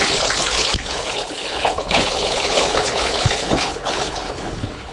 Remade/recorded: remade